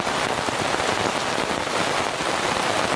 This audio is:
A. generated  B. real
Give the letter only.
B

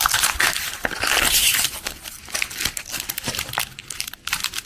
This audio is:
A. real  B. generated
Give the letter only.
A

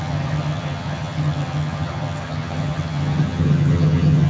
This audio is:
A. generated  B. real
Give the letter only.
A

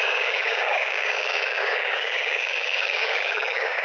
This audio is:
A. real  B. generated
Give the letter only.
B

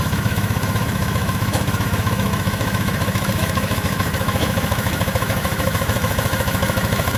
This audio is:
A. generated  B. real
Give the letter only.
A